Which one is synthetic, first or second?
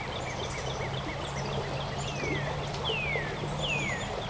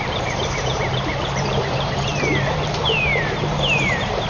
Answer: second